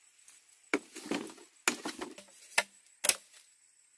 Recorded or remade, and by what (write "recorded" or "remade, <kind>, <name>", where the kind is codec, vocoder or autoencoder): recorded